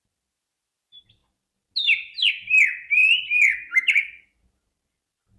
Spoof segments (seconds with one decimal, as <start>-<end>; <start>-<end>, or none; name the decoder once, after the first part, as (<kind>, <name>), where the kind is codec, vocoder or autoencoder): none